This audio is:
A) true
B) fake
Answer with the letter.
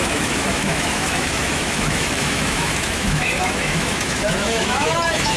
B